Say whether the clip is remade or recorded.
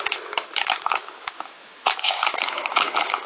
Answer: remade